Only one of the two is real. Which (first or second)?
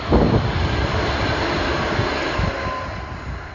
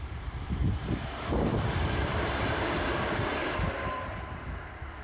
first